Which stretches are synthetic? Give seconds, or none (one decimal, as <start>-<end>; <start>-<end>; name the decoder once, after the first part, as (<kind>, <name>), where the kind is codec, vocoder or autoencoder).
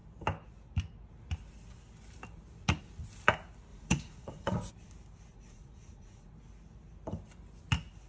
3.7-4.7 (vocoder, Vocos); 5.3-6.3